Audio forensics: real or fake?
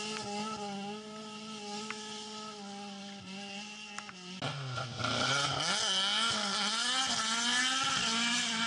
real